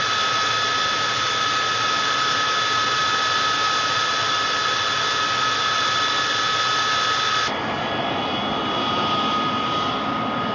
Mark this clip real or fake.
real